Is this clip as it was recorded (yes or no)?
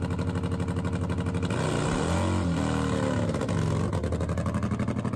yes